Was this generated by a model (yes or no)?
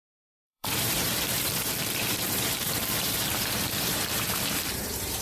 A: yes